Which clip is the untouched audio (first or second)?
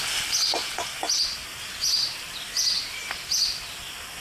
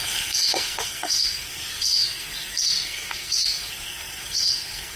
first